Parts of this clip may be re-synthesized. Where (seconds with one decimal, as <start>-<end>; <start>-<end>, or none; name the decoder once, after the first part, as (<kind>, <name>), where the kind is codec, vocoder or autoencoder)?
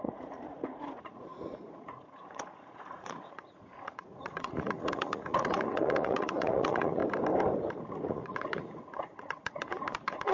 0.0-7.0 (vocoder, Vocos); 8.1-10.3